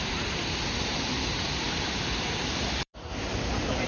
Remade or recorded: remade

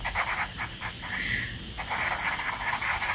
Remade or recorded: recorded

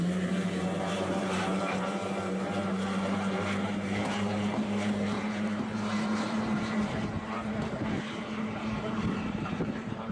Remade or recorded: remade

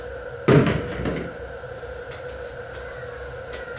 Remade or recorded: recorded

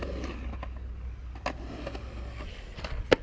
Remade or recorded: recorded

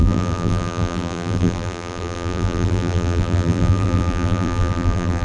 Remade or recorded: remade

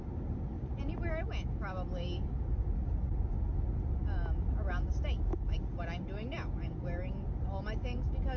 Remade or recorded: recorded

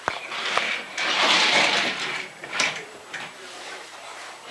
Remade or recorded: remade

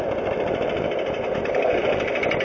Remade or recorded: recorded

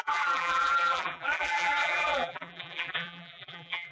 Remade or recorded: remade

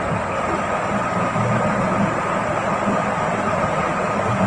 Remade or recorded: recorded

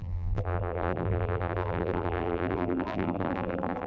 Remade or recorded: remade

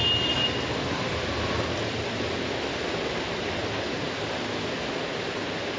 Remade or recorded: recorded